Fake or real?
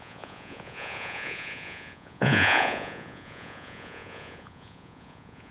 fake